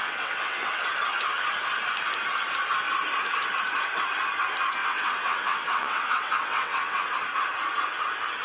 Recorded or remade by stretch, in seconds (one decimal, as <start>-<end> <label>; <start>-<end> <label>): 0.0-0.7 remade; 0.7-4.8 recorded; 4.8-7.0 remade; 7.0-8.4 recorded